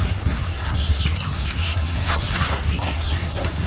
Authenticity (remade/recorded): remade